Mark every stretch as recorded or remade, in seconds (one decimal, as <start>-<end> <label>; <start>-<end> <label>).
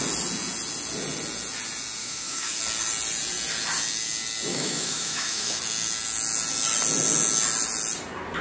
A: 0.0-2.0 recorded; 2.0-2.6 remade; 2.6-4.5 recorded; 4.5-5.6 remade; 5.6-8.4 recorded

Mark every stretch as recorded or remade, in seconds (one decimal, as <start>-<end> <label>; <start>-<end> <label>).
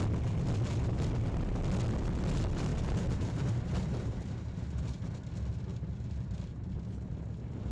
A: 0.0-2.7 recorded; 2.7-5.0 remade; 5.0-5.7 recorded; 5.7-6.7 remade; 6.7-7.7 recorded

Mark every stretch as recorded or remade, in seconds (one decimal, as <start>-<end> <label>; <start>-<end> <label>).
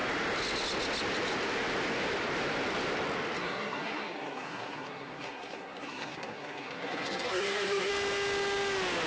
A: 0.0-3.4 recorded; 3.4-7.9 remade; 7.9-9.1 recorded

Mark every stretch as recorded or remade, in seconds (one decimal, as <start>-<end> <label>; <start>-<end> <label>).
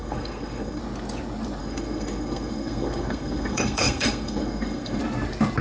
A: 0.0-0.8 remade; 0.8-1.6 recorded; 1.6-5.0 remade; 5.0-5.6 recorded